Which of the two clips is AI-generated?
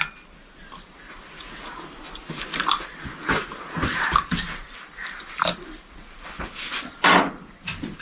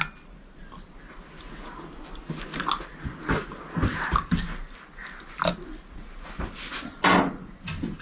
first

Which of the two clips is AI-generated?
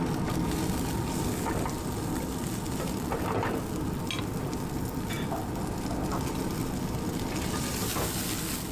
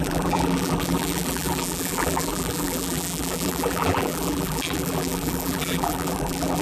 second